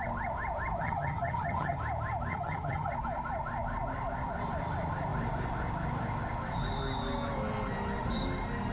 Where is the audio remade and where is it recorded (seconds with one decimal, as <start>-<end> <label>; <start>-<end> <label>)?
0.0-0.8 recorded; 0.8-1.8 remade; 1.8-2.3 recorded; 2.3-2.9 remade; 2.9-8.7 recorded